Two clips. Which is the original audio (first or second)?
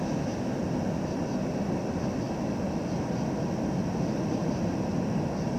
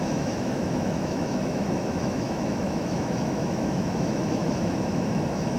first